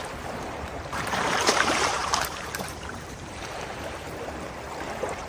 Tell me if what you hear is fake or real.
fake